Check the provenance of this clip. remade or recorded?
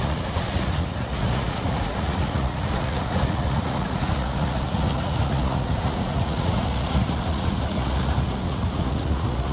remade